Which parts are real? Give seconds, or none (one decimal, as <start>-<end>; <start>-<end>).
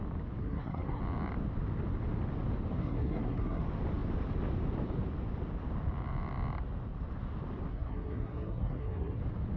0.0-0.4; 1.0-2.8; 3.6-7.7; 9.2-9.6